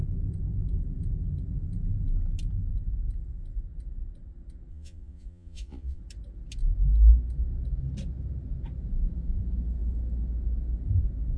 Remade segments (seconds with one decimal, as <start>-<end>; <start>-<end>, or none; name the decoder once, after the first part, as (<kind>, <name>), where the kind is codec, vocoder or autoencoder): 4.7-6.0 (vocoder, Vocos)